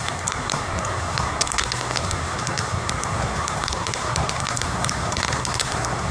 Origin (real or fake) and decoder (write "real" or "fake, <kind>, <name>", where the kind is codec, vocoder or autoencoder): fake, codec, SNAC